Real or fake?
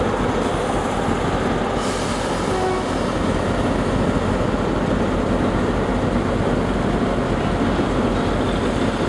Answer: real